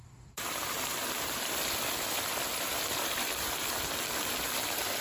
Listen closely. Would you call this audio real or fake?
fake